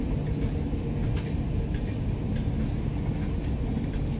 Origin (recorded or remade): recorded